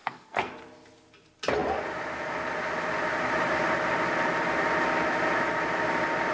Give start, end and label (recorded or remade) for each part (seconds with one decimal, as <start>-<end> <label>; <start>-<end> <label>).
0.0-0.5 remade; 0.5-6.3 recorded